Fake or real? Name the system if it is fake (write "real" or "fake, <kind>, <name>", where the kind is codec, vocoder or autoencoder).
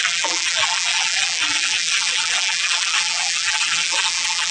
fake, vocoder, BigVGAN v2